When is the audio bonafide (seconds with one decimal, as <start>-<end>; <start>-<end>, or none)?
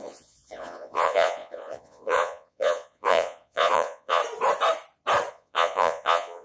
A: 4.2-5.3